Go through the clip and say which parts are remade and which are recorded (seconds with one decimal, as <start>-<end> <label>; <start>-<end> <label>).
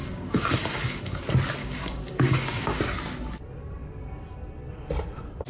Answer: 0.0-1.2 remade; 1.2-1.6 recorded; 1.6-2.8 remade; 2.8-5.5 recorded